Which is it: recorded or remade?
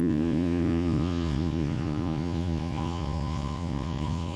remade